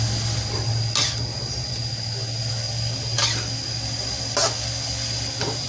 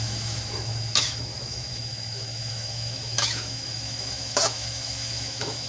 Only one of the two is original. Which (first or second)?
first